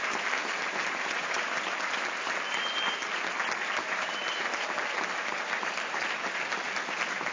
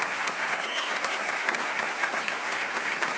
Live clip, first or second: first